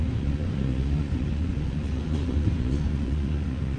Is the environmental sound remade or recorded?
remade